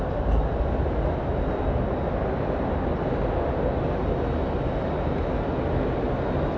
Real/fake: real